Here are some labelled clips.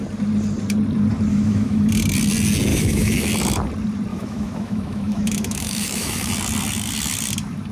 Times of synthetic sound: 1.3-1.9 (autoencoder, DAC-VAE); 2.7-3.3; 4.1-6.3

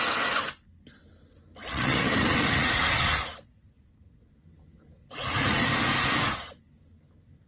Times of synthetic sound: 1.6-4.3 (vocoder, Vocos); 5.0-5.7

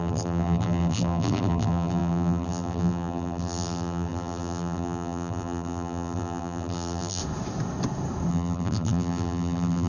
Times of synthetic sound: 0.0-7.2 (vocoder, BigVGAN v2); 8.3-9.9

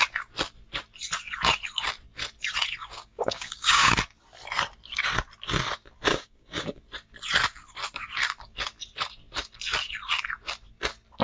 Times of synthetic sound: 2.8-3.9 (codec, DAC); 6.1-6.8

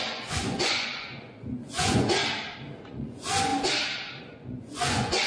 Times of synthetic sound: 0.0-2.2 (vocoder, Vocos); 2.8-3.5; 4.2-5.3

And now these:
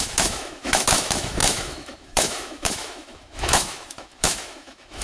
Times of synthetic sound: 0.0-5.0 (autoencoder, DAC-VAE)

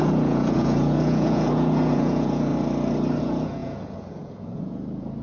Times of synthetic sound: 0.0-2.5 (vocoder, Vocos); 3.2-5.2